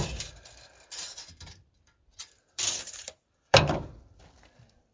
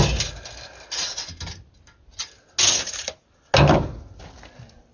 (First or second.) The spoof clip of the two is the first